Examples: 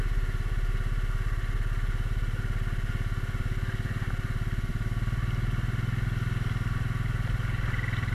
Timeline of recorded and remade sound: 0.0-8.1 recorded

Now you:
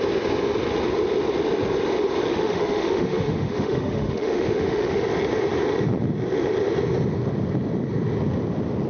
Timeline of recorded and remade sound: 0.0-2.3 recorded; 2.3-5.0 remade; 5.0-8.9 recorded